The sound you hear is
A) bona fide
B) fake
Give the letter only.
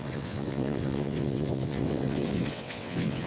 B